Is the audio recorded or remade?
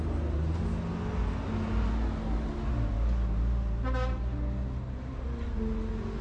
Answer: recorded